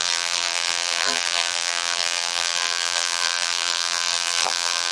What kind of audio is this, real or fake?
fake